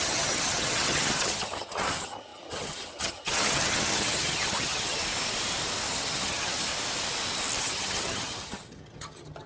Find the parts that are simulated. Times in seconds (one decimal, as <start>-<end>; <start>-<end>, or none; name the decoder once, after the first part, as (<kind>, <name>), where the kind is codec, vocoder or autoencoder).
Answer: 0.0-5.0 (vocoder, HiFi-GAN); 5.9-6.7; 7.6-9.5